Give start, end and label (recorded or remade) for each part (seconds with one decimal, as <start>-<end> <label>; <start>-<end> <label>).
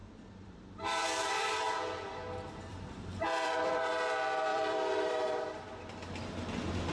0.0-1.6 remade; 1.6-2.7 recorded; 2.7-3.9 remade; 3.9-4.5 recorded; 4.5-5.1 remade; 5.1-6.9 recorded